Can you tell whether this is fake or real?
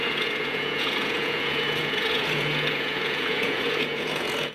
fake